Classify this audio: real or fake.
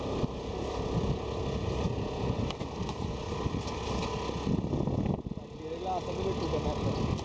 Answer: real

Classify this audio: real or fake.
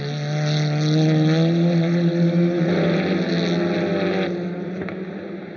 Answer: real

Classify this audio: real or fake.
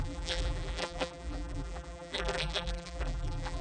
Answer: fake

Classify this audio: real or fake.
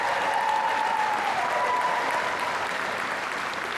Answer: real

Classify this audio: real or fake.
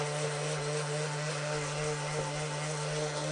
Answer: real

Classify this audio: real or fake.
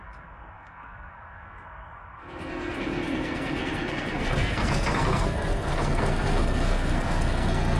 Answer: fake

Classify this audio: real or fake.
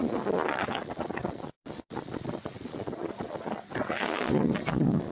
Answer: fake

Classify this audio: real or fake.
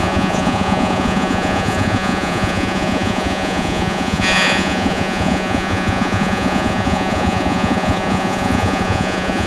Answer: fake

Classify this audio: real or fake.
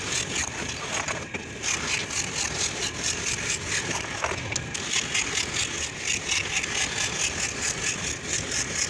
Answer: real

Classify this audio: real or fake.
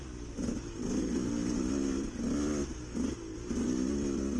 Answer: real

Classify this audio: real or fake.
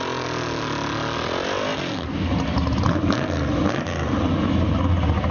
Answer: real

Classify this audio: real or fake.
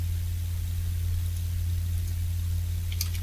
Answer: real